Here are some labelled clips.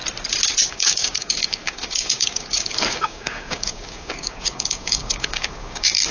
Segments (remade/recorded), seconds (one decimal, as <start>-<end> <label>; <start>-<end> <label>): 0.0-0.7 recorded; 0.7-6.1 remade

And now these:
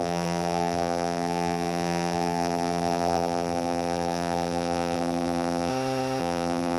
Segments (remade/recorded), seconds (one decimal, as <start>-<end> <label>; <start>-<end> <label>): 0.0-5.7 remade; 5.7-6.2 recorded; 6.2-6.8 remade

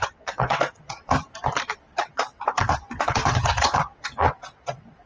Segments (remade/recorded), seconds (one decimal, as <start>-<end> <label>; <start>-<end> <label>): 0.0-1.1 remade; 1.1-2.0 recorded; 2.0-5.1 remade

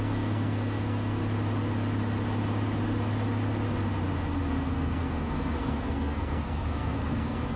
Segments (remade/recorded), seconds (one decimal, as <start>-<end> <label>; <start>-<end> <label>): 0.0-1.2 remade; 1.2-4.5 recorded; 4.5-7.6 remade

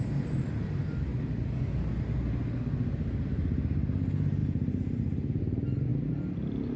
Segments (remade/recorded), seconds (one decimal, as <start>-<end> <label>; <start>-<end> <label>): 0.0-4.4 recorded; 4.4-5.4 remade; 5.4-6.8 recorded

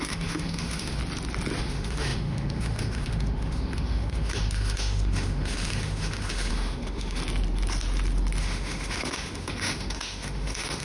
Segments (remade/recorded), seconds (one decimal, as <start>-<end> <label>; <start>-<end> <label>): 0.0-1.0 remade; 1.0-1.6 recorded; 1.6-7.2 remade; 7.2-8.4 recorded; 8.4-10.8 remade

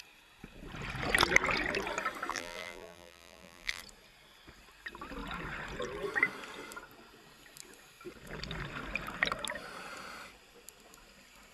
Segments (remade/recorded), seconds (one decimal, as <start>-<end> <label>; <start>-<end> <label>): 0.0-2.3 recorded; 2.3-3.8 remade; 3.8-11.5 recorded

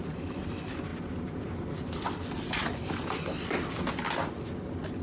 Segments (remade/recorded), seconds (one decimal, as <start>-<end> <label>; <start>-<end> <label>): 0.0-5.0 recorded